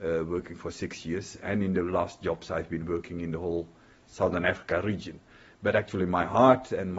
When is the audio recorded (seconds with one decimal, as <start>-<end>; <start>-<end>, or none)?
0.0-7.0